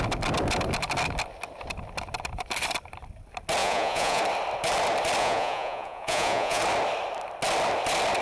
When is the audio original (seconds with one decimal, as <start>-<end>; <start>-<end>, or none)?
0.0-3.6; 4.2-5.2; 6.6-8.2